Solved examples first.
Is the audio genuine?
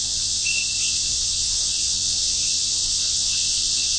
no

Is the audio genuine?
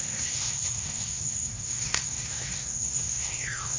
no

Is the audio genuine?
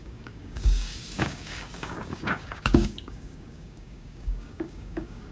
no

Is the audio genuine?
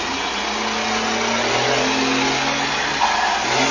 yes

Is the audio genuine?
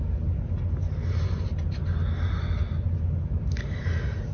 yes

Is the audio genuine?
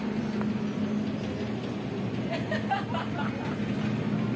yes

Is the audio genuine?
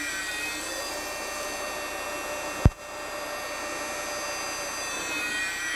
yes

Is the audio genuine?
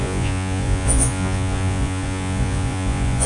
no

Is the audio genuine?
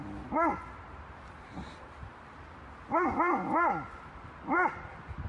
yes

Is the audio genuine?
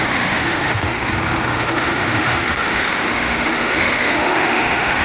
no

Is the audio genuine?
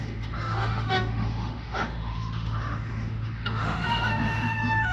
no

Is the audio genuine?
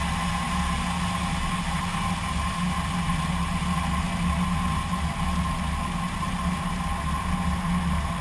yes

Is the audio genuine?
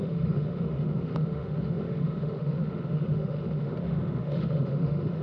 no